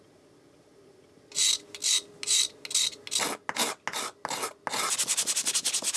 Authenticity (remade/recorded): recorded